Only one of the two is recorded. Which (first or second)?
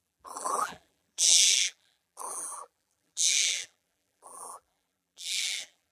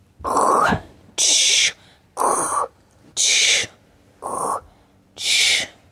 second